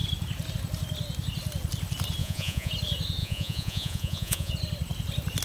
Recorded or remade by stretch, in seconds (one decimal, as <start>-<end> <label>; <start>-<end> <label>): 0.0-2.2 recorded; 2.2-2.7 remade; 2.7-3.2 recorded; 3.2-4.5 remade; 4.5-5.4 recorded